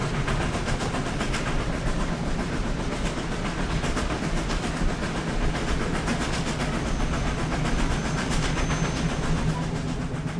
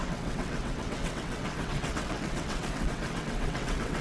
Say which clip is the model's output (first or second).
second